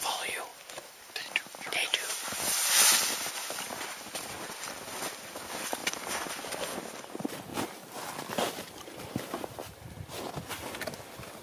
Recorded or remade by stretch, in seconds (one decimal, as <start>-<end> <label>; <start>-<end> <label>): 0.0-0.5 recorded; 0.5-2.3 remade; 2.3-7.5 recorded; 7.5-9.9 remade; 9.9-11.4 recorded